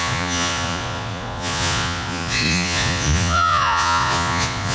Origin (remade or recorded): remade